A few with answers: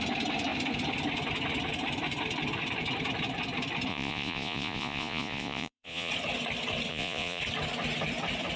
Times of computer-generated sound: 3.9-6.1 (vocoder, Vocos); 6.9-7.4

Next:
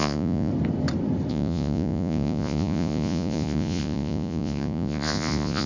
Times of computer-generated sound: 0.0-0.5 (vocoder, Vocos); 1.3-5.7

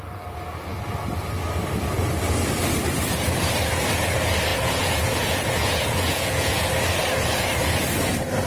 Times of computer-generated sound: 4.5-6.7 (vocoder, Vocos)

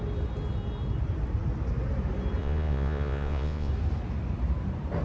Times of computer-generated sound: 2.4-3.7 (vocoder, Vocos)

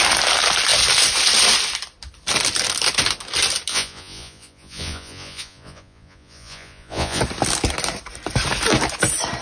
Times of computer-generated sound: 3.7-7.2 (vocoder, Vocos)

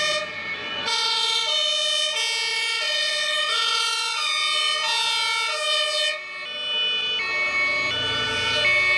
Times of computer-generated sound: 0.6-1.5 (vocoder, Vocos); 2.5-4.3

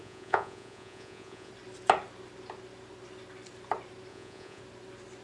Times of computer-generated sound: 0.0-1.5 (vocoder, Vocos); 4.1-4.6

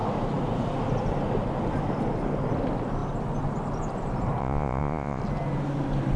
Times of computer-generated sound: 4.4-5.2 (vocoder, Vocos)